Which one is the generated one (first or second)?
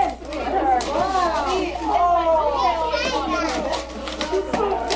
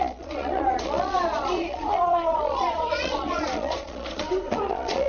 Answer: second